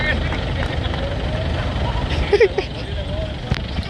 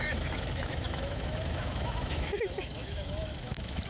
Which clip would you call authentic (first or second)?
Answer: first